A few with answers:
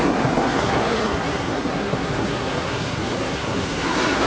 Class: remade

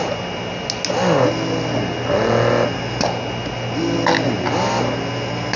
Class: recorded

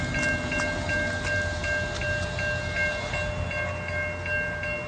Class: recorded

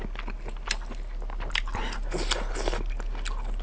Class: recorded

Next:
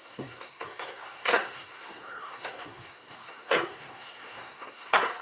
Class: remade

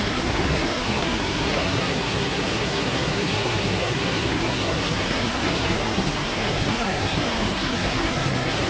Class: remade